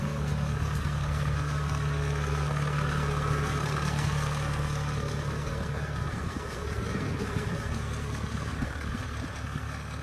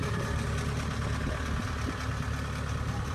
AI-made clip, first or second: first